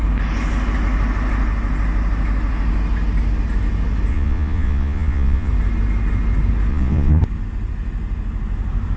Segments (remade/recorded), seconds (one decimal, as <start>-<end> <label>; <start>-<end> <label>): 0.0-4.1 recorded; 4.1-5.5 remade; 5.5-6.7 recorded; 6.7-7.2 remade; 7.2-9.0 recorded